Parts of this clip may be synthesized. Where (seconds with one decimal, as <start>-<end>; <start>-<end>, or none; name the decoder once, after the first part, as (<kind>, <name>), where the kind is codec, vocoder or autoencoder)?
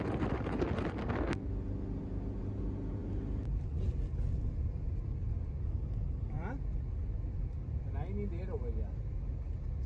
1.0-1.5 (codec, SNAC)